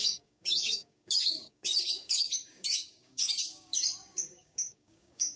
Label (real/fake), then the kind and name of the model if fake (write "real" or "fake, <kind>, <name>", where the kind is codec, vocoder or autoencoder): fake, codec, DAC